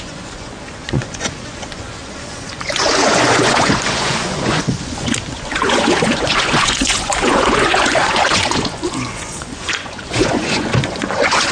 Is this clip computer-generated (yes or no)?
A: yes